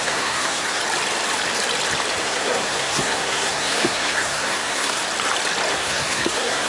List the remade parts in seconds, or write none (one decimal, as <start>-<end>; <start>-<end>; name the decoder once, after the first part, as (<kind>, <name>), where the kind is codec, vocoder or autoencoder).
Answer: 0.0-0.8 (codec, SNAC); 2.2-5.0; 5.7-6.7